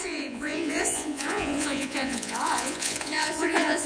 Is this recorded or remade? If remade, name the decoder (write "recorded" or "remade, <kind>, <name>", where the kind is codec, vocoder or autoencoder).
remade, vocoder, Vocos